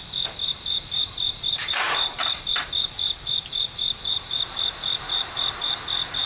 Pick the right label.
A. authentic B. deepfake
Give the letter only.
B